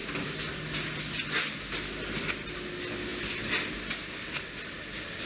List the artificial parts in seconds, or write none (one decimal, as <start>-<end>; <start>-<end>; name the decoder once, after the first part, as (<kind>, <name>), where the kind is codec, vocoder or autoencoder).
none